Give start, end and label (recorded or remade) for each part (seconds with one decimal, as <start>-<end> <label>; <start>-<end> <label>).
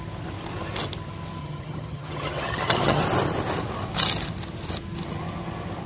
0.0-1.4 recorded; 1.4-3.0 remade; 3.0-5.9 recorded